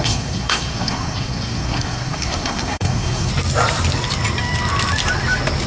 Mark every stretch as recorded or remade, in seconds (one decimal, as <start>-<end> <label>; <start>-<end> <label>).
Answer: 0.0-3.3 remade; 3.3-5.7 recorded